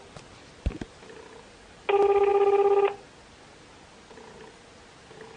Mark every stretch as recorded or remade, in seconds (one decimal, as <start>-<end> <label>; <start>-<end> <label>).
0.0-5.4 recorded